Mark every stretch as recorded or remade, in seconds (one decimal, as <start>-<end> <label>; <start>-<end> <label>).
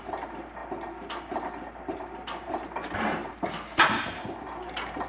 0.0-5.1 recorded